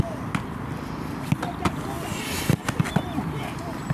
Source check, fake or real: real